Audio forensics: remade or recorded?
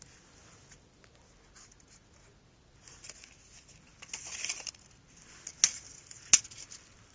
recorded